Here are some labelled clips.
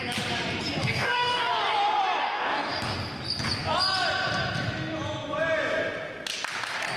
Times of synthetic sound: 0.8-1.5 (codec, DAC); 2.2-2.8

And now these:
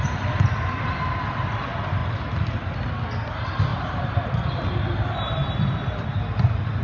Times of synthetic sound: 3.7-6.1 (vocoder, BigVGAN v2)

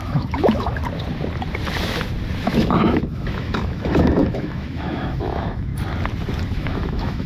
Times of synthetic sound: 0.0-0.8 (autoencoder, DAC-VAE); 2.4-5.7; 6.5-7.3

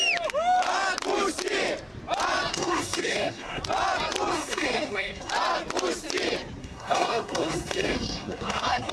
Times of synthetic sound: 2.5-3.6 (codec, SNAC); 4.3-5.3; 6.6-8.9